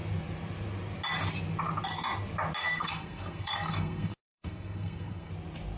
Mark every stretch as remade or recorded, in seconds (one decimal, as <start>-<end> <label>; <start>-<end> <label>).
0.0-2.6 recorded; 2.6-5.3 remade; 5.3-5.8 recorded